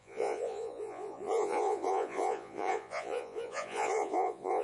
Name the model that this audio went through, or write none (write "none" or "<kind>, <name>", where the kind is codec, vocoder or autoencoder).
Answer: vocoder, Vocos